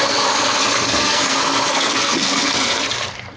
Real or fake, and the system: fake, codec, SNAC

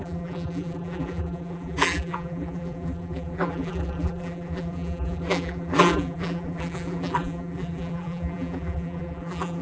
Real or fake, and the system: fake, vocoder, BigVGAN v2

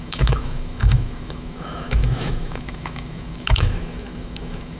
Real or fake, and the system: fake, autoencoder, DAC-VAE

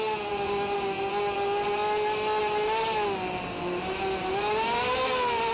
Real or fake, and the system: real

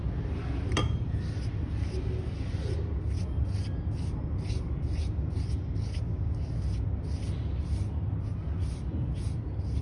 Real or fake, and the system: real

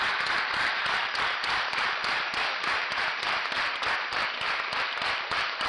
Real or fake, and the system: fake, vocoder, BigVGAN v2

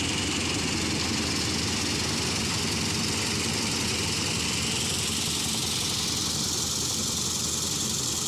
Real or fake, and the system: fake, vocoder, BigVGAN v2